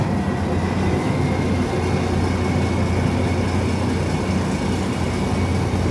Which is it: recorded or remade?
recorded